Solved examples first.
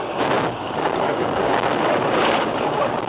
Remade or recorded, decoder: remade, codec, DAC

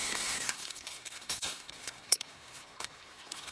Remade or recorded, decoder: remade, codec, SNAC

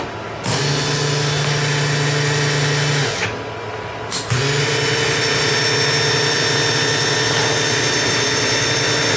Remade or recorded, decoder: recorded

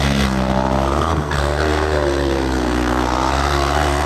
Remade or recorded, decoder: remade, codec, SNAC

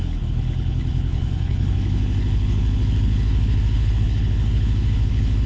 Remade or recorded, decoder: remade, codec, HILCodec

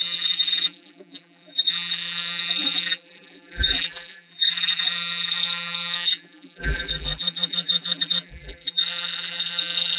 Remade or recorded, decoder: remade, vocoder, BigVGAN v2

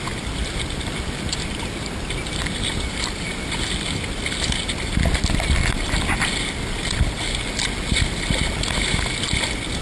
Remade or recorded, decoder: recorded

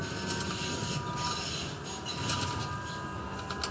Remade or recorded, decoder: recorded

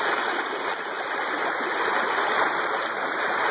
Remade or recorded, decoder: recorded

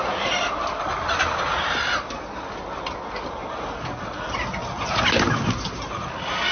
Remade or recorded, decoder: recorded